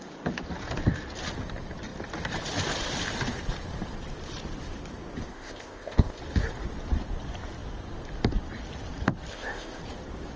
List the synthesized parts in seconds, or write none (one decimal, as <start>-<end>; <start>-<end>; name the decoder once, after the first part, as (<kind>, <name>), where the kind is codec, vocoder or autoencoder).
5.3-6.2 (codec, ZipCodec); 9.3-9.8